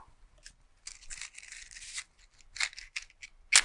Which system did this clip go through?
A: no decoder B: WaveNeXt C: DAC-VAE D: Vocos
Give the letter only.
A